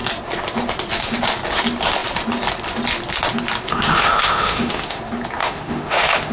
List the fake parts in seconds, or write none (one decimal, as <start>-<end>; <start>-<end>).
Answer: 3.7-5.0; 5.4-6.3